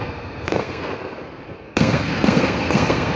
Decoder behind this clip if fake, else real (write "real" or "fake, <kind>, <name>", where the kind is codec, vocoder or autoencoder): fake, codec, SNAC